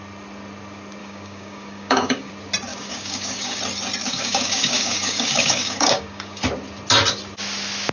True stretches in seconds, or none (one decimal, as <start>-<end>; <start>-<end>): 0.0-1.0; 2.3-2.7; 3.6-4.0; 6.4-7.9